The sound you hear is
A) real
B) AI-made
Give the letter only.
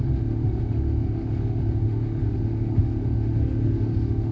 B